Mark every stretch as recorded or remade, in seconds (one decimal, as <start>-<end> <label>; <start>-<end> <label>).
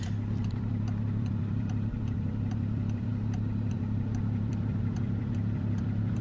0.0-3.1 remade; 3.1-3.7 recorded; 3.7-6.2 remade